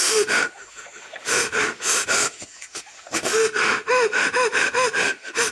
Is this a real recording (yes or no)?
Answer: no